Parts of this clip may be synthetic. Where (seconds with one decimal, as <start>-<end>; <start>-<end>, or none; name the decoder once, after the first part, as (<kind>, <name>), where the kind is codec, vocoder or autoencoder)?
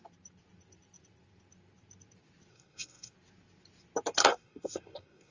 2.5-3.1 (codec, SNAC); 4.2-5.3